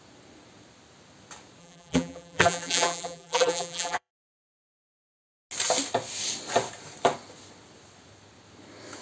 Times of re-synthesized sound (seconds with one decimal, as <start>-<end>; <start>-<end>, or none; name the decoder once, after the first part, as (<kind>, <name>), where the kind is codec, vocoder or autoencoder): 1.6-4.1 (vocoder, BigVGAN v2)